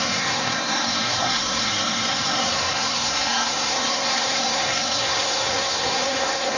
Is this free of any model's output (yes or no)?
no